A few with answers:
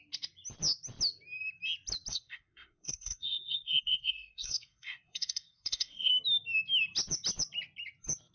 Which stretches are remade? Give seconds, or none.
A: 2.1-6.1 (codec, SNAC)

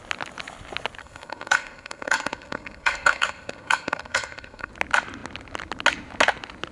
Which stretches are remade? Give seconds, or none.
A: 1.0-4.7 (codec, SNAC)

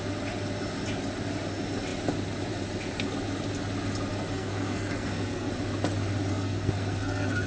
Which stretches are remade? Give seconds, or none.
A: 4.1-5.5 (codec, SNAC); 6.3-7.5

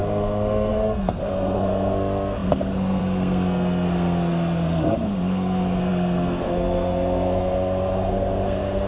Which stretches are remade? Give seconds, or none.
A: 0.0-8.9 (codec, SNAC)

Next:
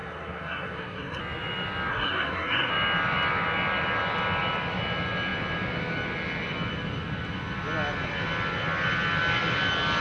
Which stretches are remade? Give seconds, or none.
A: 0.0-1.2 (codec, SNAC); 1.9-2.7

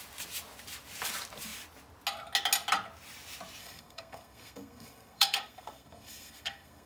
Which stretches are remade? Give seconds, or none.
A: 3.6-6.9 (codec, SNAC)

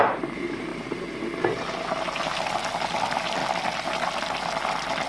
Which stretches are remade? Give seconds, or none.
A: none

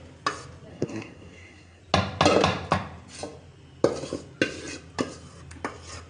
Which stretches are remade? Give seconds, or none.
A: 0.7-1.8 (codec, SNAC)